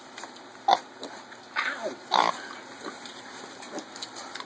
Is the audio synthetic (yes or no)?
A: no